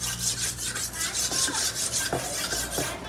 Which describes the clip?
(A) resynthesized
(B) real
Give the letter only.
B